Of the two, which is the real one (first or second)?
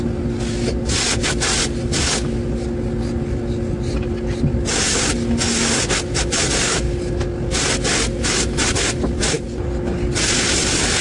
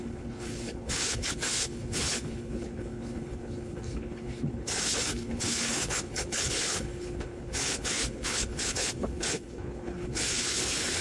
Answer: first